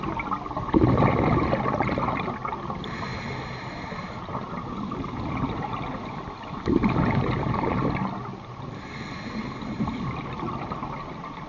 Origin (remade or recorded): recorded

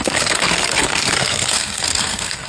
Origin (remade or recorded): remade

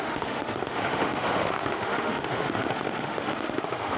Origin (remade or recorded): remade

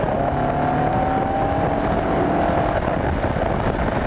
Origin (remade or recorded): recorded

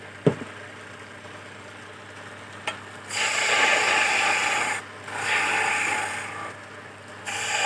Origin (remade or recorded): recorded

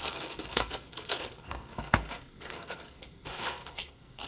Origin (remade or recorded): remade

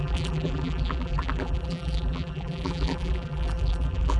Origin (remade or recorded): remade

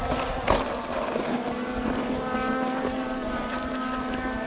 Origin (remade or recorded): recorded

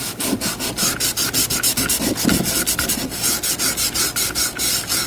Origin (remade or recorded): recorded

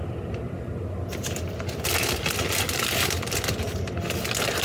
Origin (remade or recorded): recorded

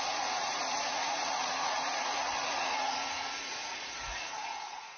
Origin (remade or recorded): remade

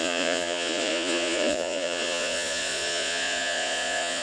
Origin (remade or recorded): remade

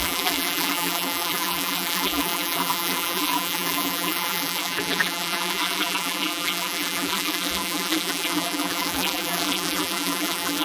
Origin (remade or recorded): remade